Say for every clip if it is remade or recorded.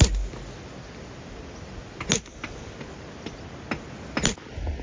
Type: recorded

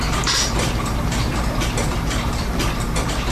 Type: remade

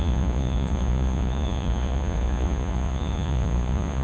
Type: remade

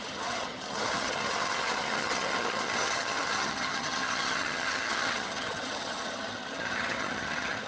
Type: remade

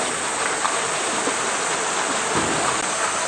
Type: recorded